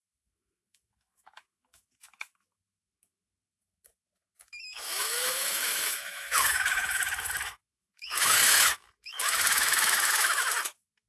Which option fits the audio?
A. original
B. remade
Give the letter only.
B